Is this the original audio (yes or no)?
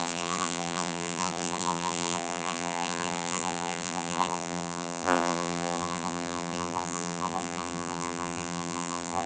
no